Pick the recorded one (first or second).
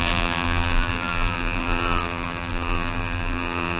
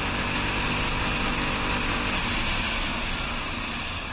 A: second